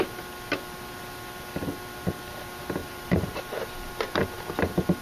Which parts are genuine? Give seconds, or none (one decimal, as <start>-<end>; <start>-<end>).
0.0-2.8; 3.9-5.0